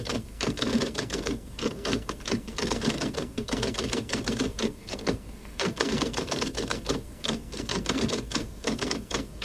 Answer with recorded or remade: remade